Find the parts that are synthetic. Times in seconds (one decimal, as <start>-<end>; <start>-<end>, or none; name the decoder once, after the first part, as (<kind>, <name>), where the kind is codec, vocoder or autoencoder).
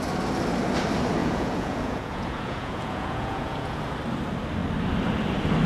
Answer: 1.2-3.8 (vocoder, Vocos)